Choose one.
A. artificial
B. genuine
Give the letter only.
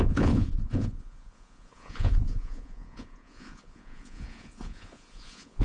A